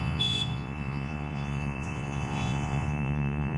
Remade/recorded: remade